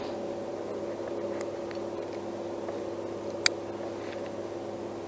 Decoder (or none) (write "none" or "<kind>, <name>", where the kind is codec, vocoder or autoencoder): none